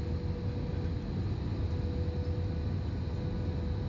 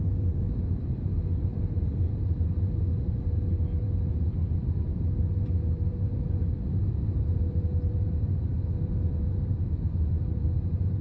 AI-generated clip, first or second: second